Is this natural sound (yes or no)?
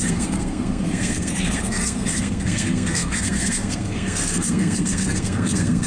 no